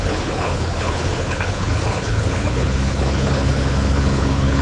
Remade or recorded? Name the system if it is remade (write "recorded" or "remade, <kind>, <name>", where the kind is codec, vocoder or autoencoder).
remade, codec, HILCodec